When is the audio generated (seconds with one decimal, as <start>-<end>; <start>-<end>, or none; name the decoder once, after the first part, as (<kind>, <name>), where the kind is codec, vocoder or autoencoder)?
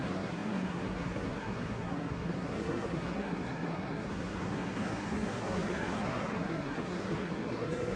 0.0-8.0 (codec, SNAC)